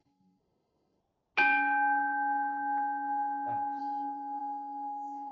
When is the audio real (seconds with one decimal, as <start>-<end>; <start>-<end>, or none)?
1.0-3.8